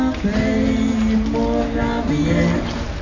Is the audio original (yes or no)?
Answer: yes